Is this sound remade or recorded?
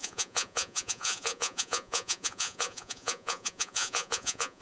remade